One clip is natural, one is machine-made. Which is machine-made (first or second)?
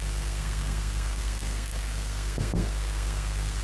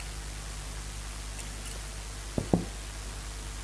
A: first